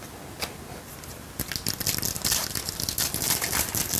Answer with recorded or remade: recorded